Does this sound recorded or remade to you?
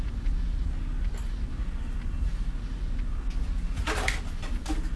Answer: recorded